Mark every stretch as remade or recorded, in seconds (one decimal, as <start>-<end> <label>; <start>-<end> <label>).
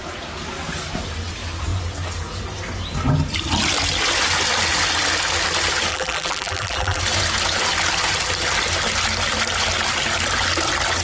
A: 0.0-5.9 recorded; 5.9-7.0 remade; 7.0-11.0 recorded